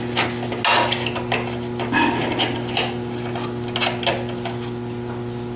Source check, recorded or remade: recorded